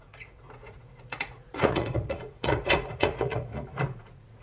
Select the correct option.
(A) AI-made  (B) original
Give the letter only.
A